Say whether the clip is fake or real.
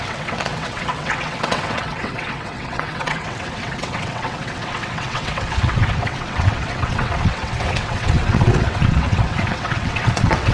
fake